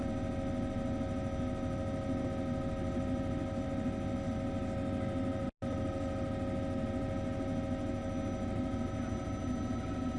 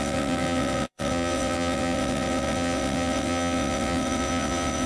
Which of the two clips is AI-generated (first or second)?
second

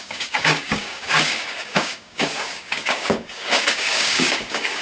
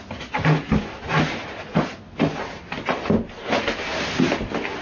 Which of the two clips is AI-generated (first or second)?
first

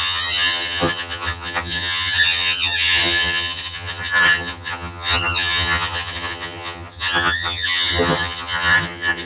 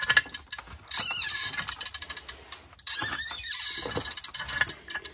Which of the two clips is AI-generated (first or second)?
first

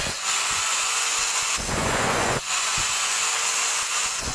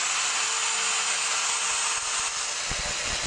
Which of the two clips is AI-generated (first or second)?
first